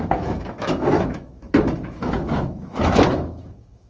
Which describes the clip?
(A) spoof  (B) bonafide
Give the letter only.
A